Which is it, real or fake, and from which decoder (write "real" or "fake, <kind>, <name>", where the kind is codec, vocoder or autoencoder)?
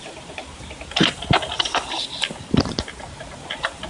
real